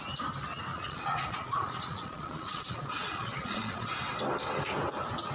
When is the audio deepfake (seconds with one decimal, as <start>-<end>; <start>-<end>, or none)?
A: 0.7-3.9